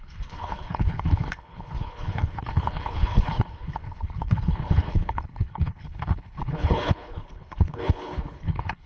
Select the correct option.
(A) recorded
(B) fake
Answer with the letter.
B